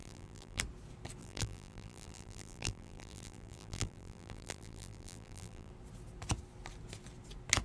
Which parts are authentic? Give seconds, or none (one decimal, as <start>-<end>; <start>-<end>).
0.6-1.2; 5.7-7.6